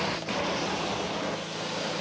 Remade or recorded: recorded